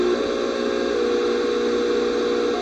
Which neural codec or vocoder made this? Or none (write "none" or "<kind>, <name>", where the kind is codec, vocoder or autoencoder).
none